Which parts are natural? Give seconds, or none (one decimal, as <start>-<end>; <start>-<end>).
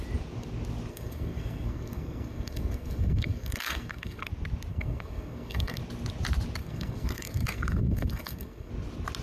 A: 0.0-0.9; 4.3-4.7; 5.8-6.6; 8.7-9.2